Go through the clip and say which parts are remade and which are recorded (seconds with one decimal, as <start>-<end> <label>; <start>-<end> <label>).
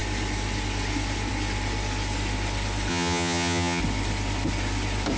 0.0-2.9 recorded; 2.9-3.8 remade; 3.8-5.2 recorded